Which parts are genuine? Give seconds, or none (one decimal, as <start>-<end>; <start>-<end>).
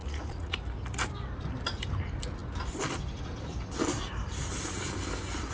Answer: 0.6-5.5